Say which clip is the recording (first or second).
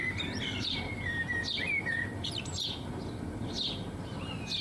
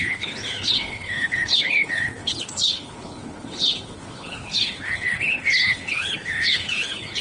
first